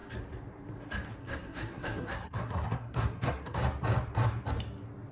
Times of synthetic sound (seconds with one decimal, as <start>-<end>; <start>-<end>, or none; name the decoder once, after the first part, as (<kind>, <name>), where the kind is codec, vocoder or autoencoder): 1.2-3.6 (codec, SNAC)